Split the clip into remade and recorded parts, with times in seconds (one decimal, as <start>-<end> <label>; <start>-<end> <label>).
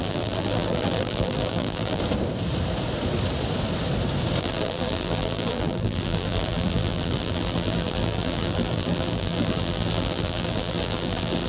0.0-2.0 remade; 2.0-4.4 recorded; 4.4-11.5 remade